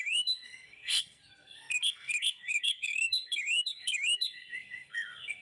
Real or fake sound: fake